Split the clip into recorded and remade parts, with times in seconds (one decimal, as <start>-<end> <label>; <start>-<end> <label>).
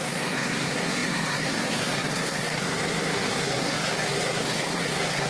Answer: 0.0-5.3 remade